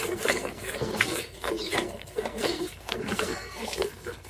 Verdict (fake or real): fake